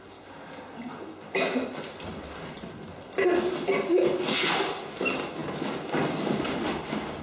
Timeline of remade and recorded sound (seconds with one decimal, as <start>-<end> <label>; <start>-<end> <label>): 0.0-7.2 recorded